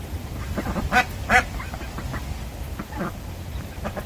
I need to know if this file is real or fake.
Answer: fake